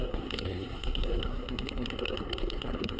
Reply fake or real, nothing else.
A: fake